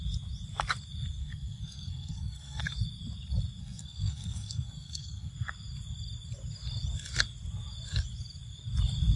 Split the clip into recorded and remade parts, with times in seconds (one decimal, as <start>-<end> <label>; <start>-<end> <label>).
0.0-1.2 recorded; 1.2-2.6 remade; 2.6-3.6 recorded; 3.6-5.3 remade; 5.3-9.2 recorded